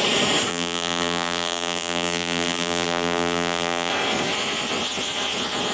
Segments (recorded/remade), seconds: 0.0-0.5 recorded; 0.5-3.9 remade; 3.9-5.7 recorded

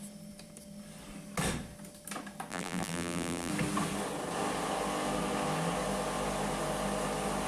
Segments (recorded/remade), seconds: 0.0-2.5 recorded; 2.5-3.5 remade; 3.5-7.5 recorded

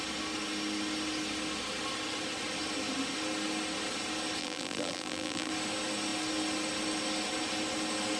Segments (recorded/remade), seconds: 0.0-4.4 recorded; 4.4-5.5 remade; 5.5-8.2 recorded

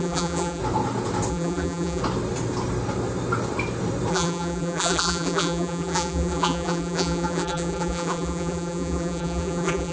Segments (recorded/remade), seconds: 0.0-0.6 remade; 0.6-1.3 recorded; 1.3-2.0 remade; 2.0-4.1 recorded; 4.1-9.9 remade

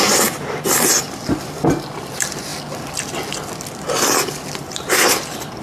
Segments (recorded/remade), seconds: 0.0-2.5 remade; 2.5-3.3 recorded; 3.3-5.6 remade

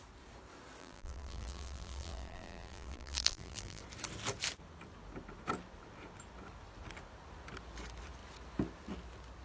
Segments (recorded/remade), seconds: 0.0-0.8 recorded; 0.8-3.8 remade; 3.8-9.4 recorded